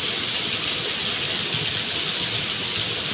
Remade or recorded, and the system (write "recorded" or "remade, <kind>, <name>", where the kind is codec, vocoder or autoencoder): recorded